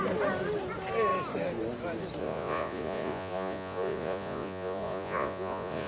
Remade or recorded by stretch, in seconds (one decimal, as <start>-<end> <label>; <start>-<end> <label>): 0.0-2.2 recorded; 2.2-5.9 remade